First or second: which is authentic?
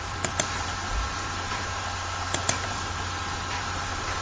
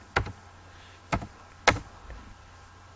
second